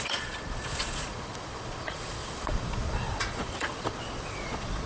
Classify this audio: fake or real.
fake